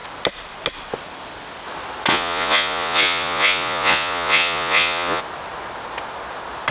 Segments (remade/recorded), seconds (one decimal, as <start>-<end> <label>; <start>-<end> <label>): 0.0-2.1 recorded; 2.1-5.2 remade; 5.2-6.7 recorded